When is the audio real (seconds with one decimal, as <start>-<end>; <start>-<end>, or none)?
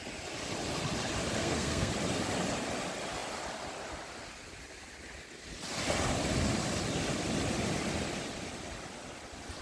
0.0-1.4; 1.9-9.6